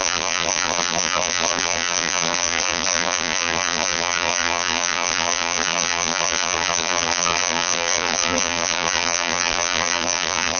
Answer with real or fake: fake